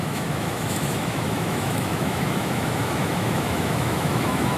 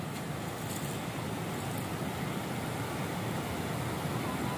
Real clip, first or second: second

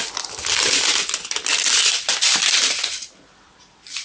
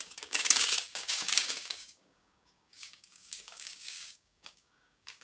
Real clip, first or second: first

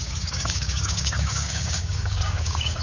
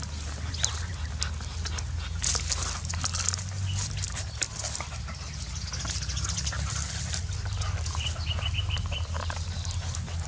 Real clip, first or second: second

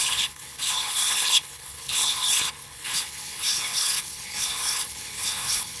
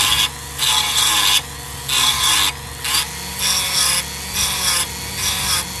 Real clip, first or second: second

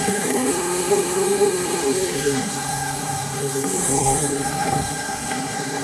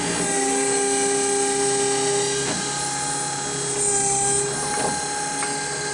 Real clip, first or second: second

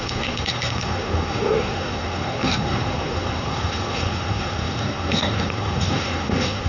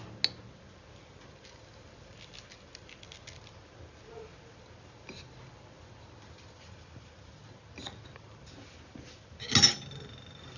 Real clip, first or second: second